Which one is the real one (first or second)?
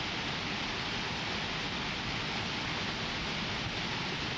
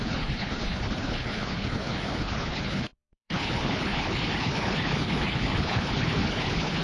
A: first